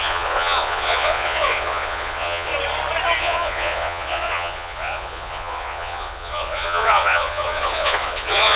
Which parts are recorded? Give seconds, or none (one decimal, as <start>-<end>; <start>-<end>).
2.5-3.2